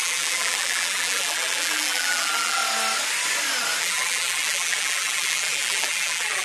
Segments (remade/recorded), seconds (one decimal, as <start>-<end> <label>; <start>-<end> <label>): 0.0-2.6 remade; 2.6-3.8 recorded; 3.8-6.4 remade